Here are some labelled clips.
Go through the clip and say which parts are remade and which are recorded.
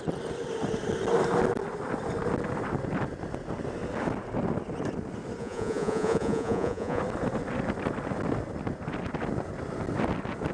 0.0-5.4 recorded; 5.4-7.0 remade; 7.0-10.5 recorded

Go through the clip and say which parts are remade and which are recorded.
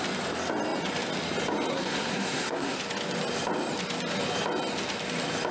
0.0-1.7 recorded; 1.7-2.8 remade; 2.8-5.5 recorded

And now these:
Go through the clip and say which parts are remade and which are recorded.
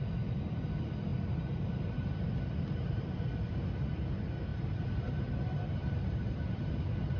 0.0-1.1 recorded; 1.1-3.2 remade; 3.2-4.5 recorded; 4.5-7.2 remade